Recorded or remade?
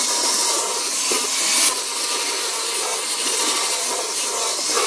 recorded